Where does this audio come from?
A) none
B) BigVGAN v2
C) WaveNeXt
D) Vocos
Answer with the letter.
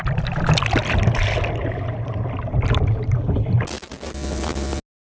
A